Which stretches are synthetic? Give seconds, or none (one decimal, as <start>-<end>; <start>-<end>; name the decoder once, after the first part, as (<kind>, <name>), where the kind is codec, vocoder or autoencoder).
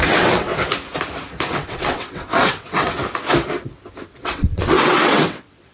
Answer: 0.0-0.5 (vocoder, WaveNeXt); 1.5-3.0; 4.1-5.7